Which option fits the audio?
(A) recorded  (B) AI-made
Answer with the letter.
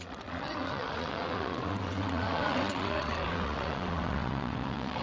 B